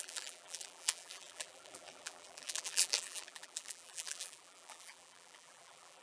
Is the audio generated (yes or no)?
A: yes